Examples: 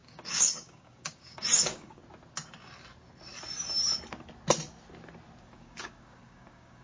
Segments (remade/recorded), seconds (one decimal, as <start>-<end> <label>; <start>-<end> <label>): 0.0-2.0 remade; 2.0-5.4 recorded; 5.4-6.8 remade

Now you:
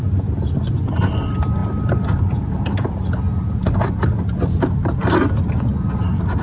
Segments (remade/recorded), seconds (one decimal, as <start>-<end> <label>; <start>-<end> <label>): 0.0-6.4 recorded

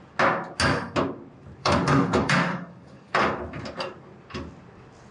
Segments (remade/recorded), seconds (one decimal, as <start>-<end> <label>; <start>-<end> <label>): 0.0-1.6 recorded; 1.6-3.4 remade; 3.4-5.1 recorded

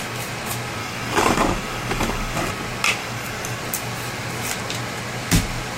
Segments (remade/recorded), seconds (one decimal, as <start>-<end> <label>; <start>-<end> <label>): 0.0-0.8 recorded; 0.8-2.5 remade; 2.5-3.0 recorded; 3.0-3.6 remade; 3.6-5.8 recorded

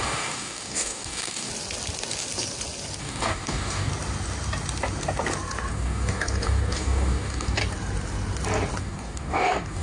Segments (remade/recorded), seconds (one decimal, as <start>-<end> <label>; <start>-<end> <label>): 0.0-1.5 remade; 1.5-3.0 recorded; 3.0-3.9 remade; 3.9-5.7 recorded; 5.7-7.6 remade; 7.6-8.8 recorded; 8.8-9.8 remade